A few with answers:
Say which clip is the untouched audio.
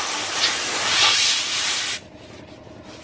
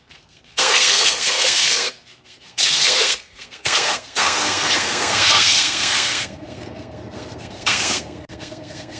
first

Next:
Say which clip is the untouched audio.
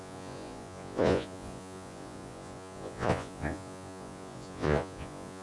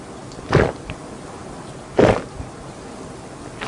second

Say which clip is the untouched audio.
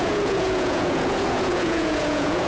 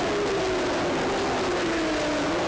second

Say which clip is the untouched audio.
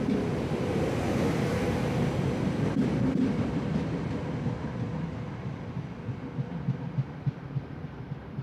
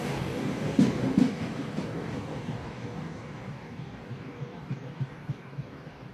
first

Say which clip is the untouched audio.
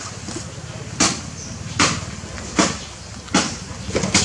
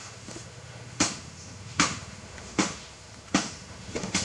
first